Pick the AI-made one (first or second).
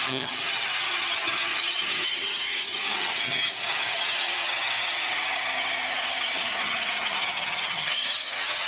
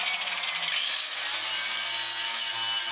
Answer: first